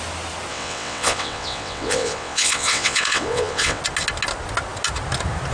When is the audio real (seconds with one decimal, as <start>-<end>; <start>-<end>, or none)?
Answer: 0.0-0.5; 3.8-5.5